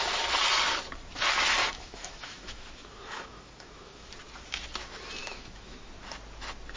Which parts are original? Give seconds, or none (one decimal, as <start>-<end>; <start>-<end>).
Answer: 0.0-1.6; 4.1-5.2; 5.9-6.8